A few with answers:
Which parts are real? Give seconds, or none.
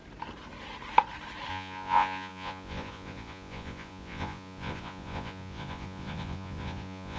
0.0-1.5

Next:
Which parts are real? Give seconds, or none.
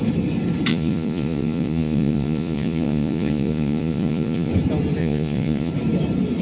0.0-0.7; 4.5-5.0; 5.7-6.4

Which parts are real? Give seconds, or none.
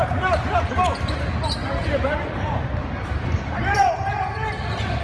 0.0-1.6; 4.6-5.0